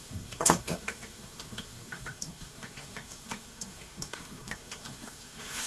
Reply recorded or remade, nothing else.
remade